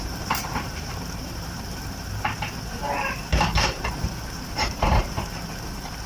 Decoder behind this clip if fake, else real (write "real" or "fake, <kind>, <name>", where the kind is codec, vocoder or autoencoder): fake, vocoder, BigVGAN v2